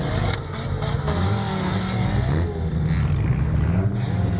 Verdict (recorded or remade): recorded